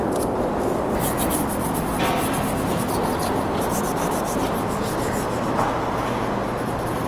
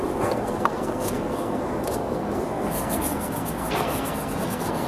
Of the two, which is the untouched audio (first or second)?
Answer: first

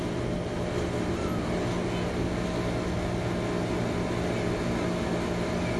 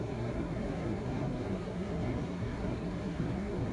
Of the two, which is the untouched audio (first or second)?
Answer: first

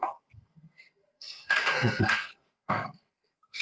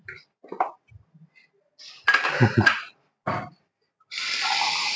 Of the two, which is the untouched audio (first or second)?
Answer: second